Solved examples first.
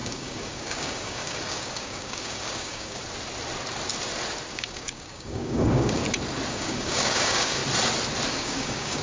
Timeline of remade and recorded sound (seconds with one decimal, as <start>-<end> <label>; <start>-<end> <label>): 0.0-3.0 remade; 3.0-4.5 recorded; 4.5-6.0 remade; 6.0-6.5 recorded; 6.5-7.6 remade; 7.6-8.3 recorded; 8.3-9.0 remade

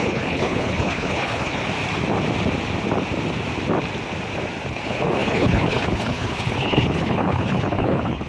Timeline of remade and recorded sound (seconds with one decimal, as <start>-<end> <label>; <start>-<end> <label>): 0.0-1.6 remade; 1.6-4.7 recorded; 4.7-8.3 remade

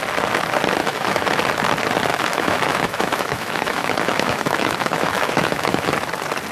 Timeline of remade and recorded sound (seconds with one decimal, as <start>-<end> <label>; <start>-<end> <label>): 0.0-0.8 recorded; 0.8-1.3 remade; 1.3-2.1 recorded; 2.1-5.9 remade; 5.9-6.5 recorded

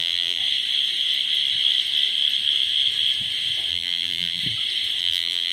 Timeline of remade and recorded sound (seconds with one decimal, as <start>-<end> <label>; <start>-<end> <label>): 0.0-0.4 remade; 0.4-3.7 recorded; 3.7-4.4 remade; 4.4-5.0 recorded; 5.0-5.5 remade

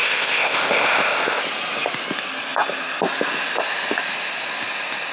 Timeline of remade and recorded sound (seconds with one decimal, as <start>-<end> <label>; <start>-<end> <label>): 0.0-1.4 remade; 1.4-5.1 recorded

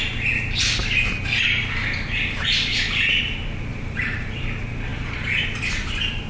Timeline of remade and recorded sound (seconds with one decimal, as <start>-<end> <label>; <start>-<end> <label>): 0.0-3.7 recorded; 3.7-4.4 remade; 4.4-4.9 recorded; 4.9-5.6 remade; 5.6-6.3 recorded